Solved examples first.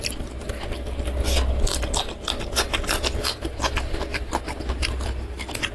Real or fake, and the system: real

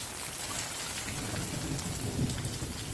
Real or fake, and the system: fake, vocoder, BigVGAN v2